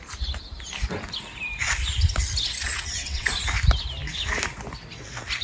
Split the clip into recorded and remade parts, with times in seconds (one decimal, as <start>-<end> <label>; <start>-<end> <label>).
0.0-2.6 recorded; 2.6-3.3 remade; 3.3-5.4 recorded